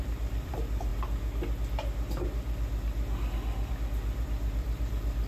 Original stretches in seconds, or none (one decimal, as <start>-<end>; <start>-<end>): 0.9-3.7